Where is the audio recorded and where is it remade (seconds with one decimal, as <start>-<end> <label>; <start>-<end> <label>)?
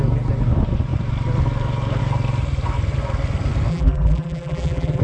0.0-3.7 recorded; 3.7-5.0 remade